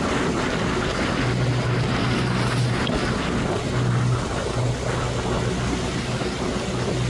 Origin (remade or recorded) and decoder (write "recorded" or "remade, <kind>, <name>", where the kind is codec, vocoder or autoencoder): recorded